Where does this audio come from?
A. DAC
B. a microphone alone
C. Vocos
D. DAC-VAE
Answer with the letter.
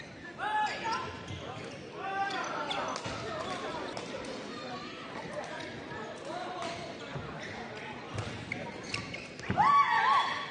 B